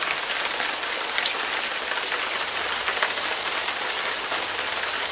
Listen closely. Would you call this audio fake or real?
real